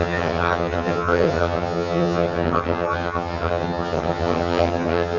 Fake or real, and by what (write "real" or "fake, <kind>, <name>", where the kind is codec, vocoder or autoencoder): fake, vocoder, HiFi-GAN